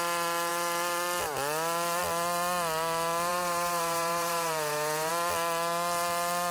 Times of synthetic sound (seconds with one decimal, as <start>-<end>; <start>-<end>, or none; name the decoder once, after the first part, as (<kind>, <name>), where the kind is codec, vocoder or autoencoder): 3.3-5.1 (vocoder, BigVGAN v2)